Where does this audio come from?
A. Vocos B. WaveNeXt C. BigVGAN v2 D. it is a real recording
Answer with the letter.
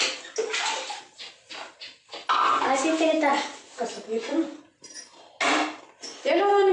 D